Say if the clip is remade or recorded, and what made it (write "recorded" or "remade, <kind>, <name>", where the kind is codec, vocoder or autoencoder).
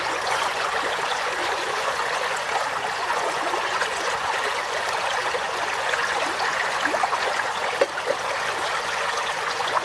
remade, vocoder, Vocos